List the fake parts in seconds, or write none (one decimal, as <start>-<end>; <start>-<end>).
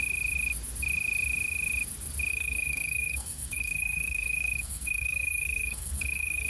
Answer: 2.3-6.5